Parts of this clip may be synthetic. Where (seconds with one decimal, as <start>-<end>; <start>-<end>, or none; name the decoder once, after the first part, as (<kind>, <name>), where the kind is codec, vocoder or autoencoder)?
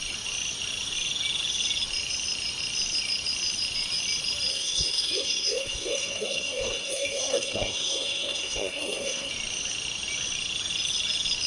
4.5-9.3 (codec, SNAC)